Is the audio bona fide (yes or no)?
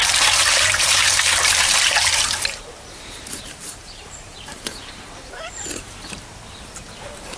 no